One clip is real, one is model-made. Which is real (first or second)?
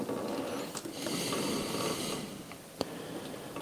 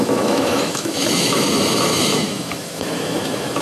first